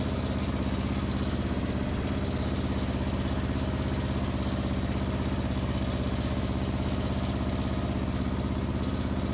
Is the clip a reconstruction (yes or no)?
no